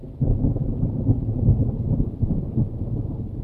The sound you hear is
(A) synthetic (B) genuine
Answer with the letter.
B